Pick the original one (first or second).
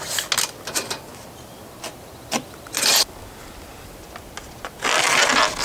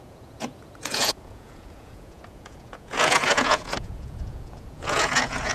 first